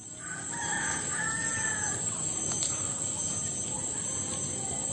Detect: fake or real real